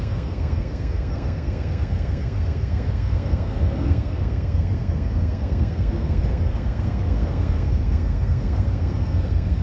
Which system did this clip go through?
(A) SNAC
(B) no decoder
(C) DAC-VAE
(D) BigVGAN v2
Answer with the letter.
A